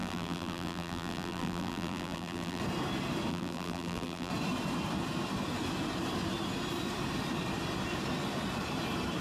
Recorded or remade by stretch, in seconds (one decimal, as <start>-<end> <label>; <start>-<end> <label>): 0.0-2.6 remade; 2.6-3.3 recorded; 3.3-4.3 remade; 4.3-9.2 recorded